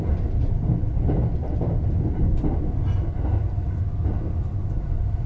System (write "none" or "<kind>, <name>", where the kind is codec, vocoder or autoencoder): none